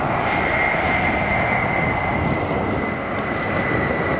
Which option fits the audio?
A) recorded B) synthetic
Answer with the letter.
A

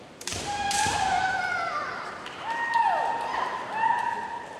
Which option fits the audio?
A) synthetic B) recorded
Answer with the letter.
A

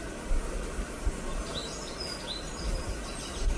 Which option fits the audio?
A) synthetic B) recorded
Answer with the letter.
B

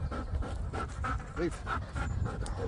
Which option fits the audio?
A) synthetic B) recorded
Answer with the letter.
B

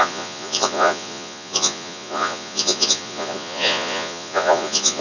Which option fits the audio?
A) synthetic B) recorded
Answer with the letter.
A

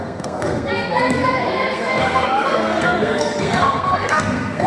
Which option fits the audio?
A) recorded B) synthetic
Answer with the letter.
B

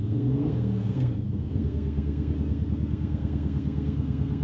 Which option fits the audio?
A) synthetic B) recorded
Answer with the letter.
A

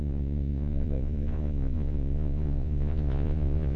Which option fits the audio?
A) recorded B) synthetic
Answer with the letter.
B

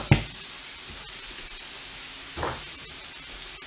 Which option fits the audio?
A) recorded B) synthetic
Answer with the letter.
A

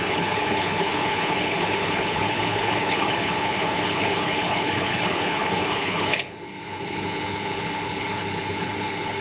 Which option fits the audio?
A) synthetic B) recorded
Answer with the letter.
A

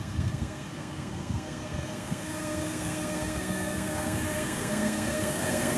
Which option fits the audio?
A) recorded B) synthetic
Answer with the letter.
B